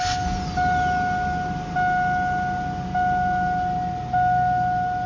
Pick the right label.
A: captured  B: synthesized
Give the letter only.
A